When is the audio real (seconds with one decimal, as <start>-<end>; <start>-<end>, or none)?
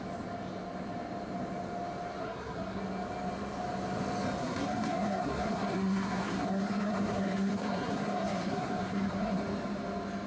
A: 0.0-2.2; 2.8-4.4; 9.4-10.3